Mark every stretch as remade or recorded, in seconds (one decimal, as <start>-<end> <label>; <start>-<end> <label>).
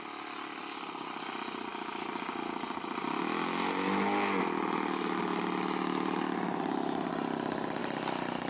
0.0-8.5 recorded